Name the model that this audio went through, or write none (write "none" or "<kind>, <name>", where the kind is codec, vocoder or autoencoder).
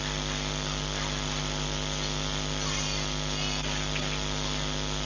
none